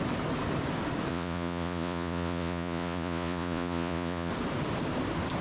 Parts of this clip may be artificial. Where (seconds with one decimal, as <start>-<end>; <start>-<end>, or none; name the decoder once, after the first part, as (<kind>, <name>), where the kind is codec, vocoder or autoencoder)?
1.1-4.3 (vocoder, Vocos)